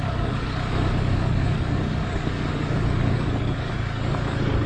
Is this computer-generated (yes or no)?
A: yes